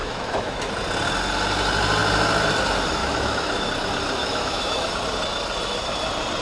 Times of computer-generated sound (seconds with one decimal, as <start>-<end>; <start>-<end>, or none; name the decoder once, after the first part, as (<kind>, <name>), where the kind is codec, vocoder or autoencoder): 0.0-0.7 (autoencoder, DAC-VAE); 3.0-3.7; 4.2-4.9